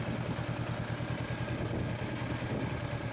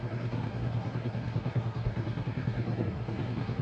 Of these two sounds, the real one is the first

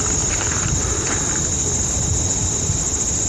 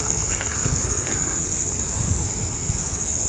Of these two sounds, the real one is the first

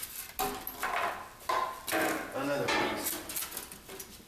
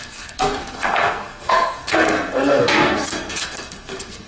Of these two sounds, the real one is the first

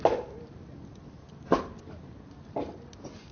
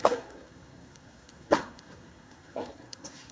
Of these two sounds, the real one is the first